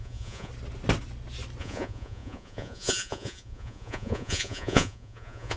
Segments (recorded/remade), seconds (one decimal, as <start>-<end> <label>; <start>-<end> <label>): 0.0-0.5 remade; 0.5-1.6 recorded; 1.6-5.6 remade